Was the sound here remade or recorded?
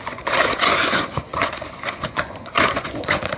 remade